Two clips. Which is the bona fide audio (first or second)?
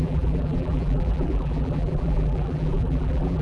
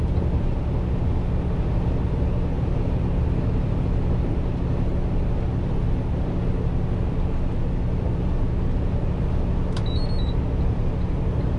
second